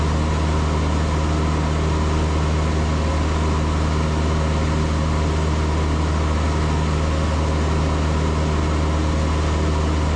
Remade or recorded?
recorded